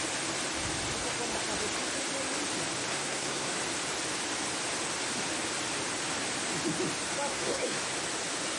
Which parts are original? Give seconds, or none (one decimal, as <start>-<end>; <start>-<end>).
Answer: 0.0-2.9; 3.5-7.3; 7.8-8.6